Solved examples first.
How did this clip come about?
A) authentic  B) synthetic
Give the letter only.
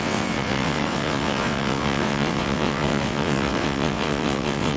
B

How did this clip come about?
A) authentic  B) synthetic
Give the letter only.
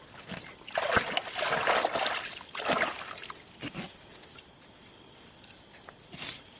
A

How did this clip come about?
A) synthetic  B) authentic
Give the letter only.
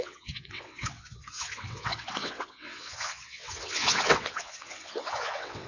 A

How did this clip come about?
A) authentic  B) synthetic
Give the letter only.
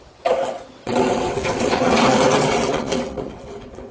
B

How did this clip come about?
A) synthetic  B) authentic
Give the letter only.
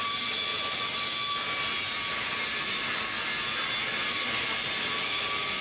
B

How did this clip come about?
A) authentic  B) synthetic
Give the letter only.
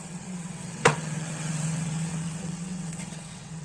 B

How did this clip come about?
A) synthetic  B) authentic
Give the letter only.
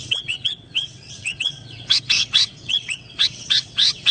A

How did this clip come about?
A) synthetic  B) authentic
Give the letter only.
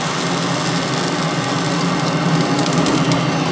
B